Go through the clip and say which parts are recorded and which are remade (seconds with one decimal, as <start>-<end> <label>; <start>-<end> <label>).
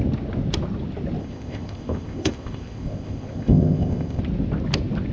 0.0-1.2 recorded; 1.2-4.2 remade; 4.2-5.1 recorded